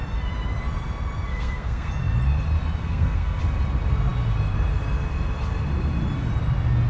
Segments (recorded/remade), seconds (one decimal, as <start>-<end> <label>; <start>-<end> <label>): 0.0-1.3 recorded; 1.3-1.9 remade; 1.9-2.8 recorded; 2.8-3.4 remade; 3.4-6.9 recorded